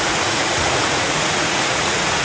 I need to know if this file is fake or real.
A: fake